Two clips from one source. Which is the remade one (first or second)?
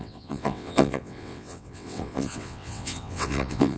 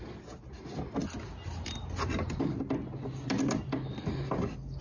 first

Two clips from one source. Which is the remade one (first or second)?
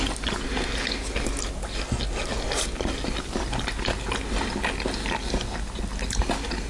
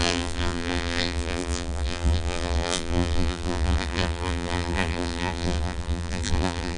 second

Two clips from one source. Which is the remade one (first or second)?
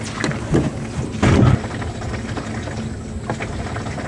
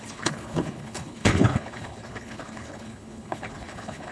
second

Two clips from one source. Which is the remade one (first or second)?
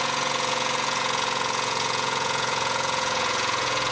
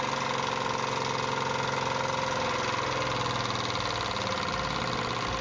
first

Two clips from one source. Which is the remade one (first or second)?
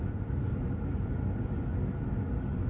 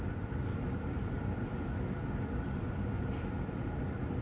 second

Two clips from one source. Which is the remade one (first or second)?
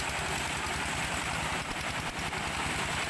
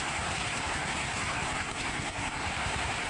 second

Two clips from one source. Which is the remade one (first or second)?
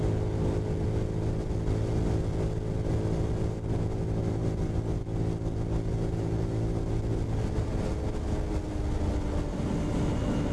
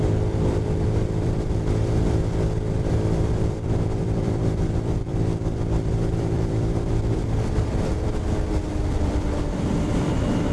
second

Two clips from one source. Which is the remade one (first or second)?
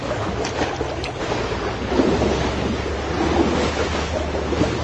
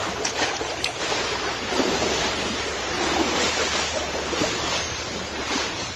second